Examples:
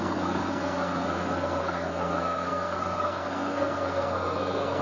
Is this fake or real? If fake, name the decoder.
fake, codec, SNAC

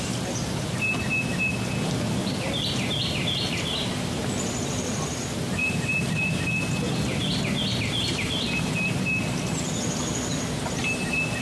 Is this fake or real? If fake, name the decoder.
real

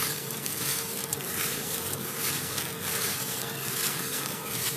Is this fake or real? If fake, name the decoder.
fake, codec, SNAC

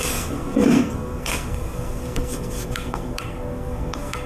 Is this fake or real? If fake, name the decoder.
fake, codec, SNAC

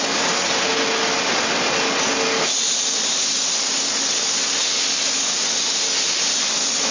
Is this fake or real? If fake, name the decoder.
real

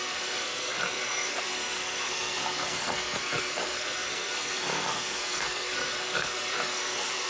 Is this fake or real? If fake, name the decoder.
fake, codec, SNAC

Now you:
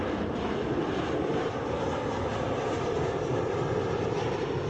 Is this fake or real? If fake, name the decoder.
real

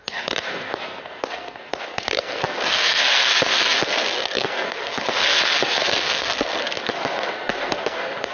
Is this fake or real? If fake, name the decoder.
fake, codec, SNAC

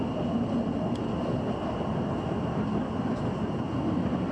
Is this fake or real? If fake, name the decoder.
real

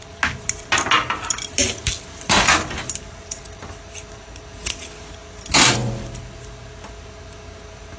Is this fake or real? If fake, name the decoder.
real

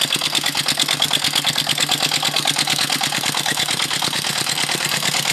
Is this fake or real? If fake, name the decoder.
fake, codec, SNAC